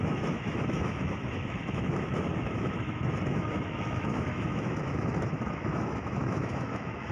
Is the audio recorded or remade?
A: remade